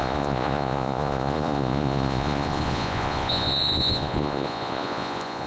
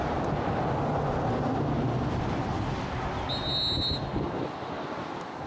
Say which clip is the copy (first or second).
first